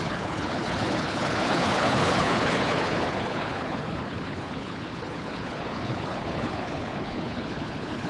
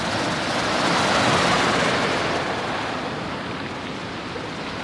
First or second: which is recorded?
second